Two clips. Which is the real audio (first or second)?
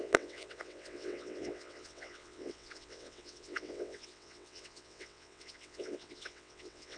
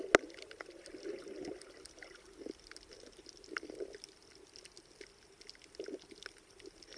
second